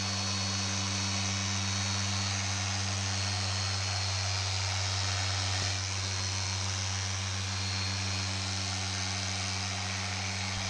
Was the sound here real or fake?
real